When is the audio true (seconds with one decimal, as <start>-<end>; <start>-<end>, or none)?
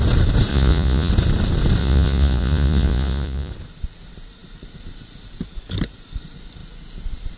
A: 0.0-0.5; 1.1-1.8; 3.5-7.4